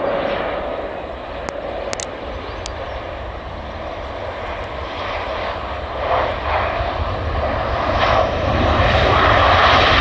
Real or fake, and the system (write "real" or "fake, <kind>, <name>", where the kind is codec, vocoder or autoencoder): real